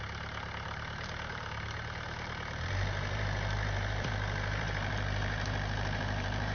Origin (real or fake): fake